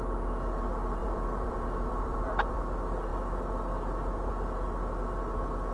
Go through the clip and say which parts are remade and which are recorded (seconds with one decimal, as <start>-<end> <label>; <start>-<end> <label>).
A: 0.0-1.0 recorded; 1.0-2.6 remade; 2.6-5.7 recorded